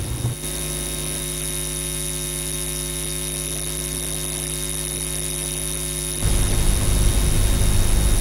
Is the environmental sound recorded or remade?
recorded